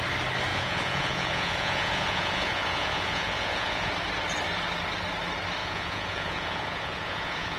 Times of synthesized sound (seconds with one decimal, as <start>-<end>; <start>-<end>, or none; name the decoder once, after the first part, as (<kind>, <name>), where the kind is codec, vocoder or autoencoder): 0.5-3.9 (vocoder, Vocos); 5.6-7.6